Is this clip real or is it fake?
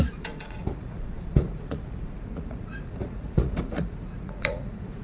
fake